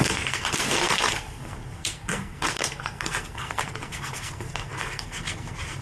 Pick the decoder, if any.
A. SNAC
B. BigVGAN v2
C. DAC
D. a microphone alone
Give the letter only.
A